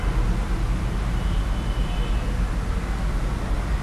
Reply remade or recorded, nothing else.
recorded